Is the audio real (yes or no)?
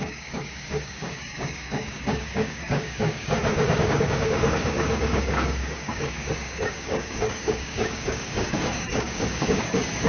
no